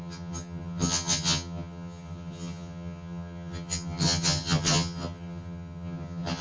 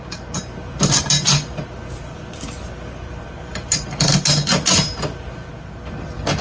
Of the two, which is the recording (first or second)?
second